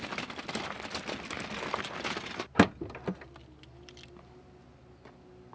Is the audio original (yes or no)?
yes